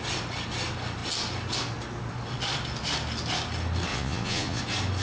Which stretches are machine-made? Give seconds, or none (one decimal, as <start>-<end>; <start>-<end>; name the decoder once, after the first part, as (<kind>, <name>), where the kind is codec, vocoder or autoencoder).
3.9-4.6 (vocoder, Vocos)